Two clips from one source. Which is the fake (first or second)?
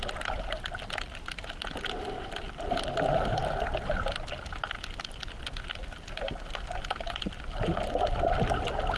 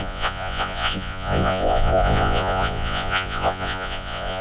second